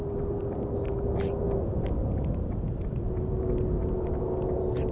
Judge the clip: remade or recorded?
recorded